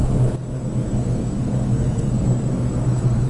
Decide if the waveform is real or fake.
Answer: fake